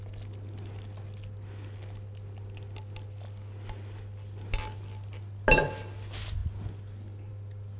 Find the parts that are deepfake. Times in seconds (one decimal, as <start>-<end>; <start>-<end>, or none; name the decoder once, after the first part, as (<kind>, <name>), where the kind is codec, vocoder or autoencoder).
none